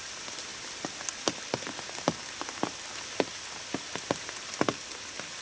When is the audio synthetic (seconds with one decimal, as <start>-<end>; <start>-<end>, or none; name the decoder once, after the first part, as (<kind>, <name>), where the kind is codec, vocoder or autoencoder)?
none